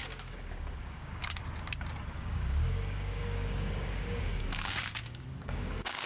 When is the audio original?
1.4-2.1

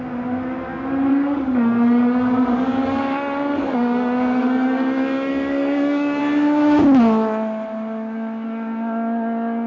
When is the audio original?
0.0-1.1; 6.2-9.7

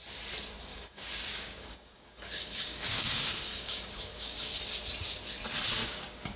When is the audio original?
0.0-0.7; 4.5-5.8

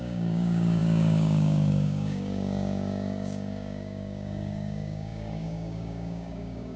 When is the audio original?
none

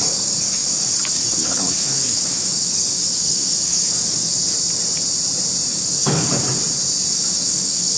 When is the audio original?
4.3-5.7; 6.3-7.1

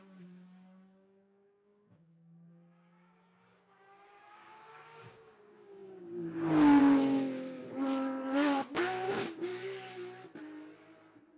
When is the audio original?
7.6-9.1; 9.5-11.4